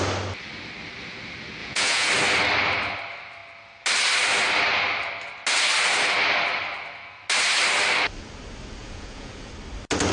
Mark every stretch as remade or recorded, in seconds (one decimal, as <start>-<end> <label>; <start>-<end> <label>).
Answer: 0.0-1.6 recorded; 1.6-2.1 remade; 2.1-8.8 recorded; 8.8-9.5 remade; 9.5-10.1 recorded